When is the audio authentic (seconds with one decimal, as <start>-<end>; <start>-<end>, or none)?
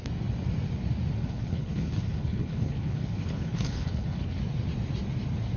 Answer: 0.0-1.2; 4.4-5.6